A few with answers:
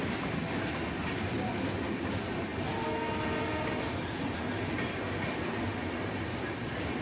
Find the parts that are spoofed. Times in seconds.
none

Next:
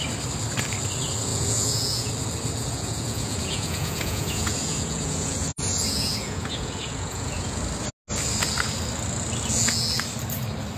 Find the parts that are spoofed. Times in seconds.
1.3-2.1 (vocoder, Vocos); 2.6-7.6

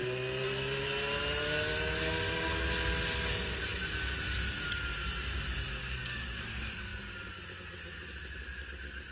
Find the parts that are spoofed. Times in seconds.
5.8-6.4 (codec, DAC)

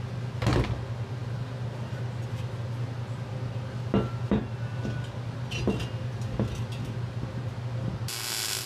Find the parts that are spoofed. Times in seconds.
none

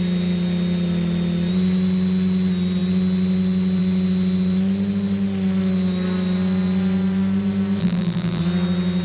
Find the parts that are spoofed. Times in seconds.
7.8-8.4 (vocoder, BigVGAN v2)

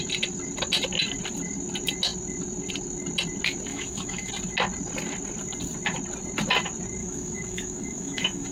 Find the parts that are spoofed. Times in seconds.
3.7-4.3 (autoencoder, DAC-VAE); 7.0-8.5